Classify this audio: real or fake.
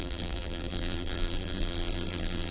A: fake